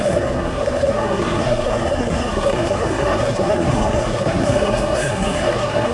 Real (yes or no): no